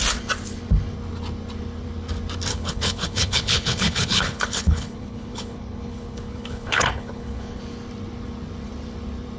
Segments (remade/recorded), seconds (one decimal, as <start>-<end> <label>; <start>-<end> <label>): 0.0-2.5 recorded; 2.5-7.6 remade; 7.6-9.4 recorded